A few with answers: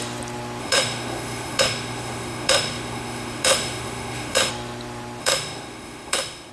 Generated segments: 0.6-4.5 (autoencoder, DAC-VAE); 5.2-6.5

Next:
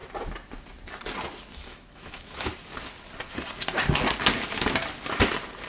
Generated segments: 1.5-2.5 (autoencoder, DAC-VAE)

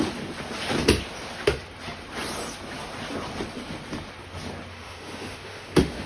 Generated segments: 4.7-6.1 (autoencoder, DAC-VAE)

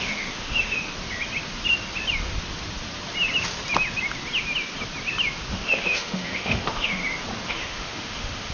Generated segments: 0.0-0.9 (autoencoder, DAC-VAE); 5.5-7.0; 7.5-8.5